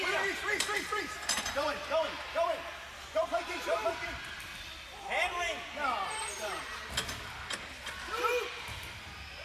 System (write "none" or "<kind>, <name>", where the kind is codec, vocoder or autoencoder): vocoder, BigVGAN v2